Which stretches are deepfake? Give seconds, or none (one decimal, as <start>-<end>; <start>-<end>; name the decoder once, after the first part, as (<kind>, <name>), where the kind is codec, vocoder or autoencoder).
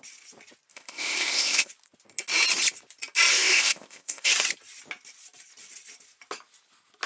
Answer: 0.7-1.7 (codec, ZipCodec); 3.3-4.3